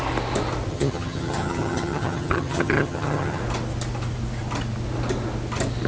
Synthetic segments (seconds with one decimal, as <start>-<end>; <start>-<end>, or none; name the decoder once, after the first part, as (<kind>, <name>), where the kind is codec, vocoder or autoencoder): 0.7-3.4 (vocoder, HiFi-GAN)